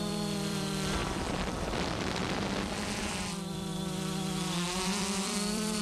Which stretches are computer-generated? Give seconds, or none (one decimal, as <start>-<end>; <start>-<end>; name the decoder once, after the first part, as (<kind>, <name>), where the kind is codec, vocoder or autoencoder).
0.0-2.2 (vocoder, BigVGAN v2); 3.0-5.8